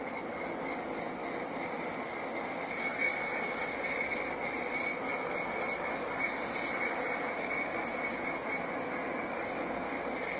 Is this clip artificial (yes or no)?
no